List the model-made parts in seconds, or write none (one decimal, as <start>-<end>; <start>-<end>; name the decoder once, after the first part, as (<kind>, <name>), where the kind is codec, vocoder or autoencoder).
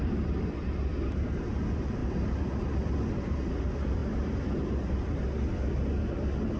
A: none